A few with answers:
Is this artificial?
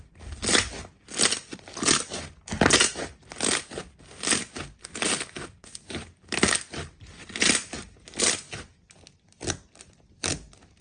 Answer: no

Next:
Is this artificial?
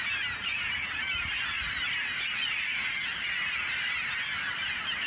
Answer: no